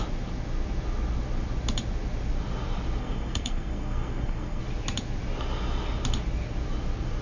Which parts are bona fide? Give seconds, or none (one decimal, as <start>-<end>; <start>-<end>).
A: 0.0-3.0; 4.6-7.2